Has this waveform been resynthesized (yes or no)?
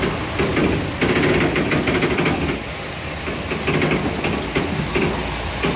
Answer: no